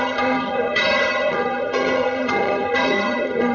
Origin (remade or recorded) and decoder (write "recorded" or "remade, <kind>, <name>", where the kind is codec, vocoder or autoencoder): remade, vocoder, HiFi-GAN